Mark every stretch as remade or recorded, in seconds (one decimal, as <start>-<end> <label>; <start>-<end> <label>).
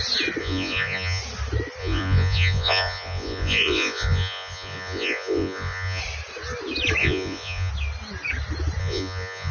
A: 0.0-0.4 recorded; 0.4-1.2 remade; 1.2-1.8 recorded; 1.8-6.0 remade; 6.0-7.0 recorded; 7.0-7.7 remade; 7.7-8.8 recorded; 8.8-9.5 remade